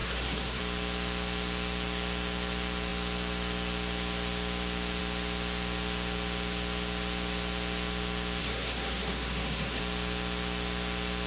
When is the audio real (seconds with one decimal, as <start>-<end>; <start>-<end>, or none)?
0.6-8.4; 9.8-11.3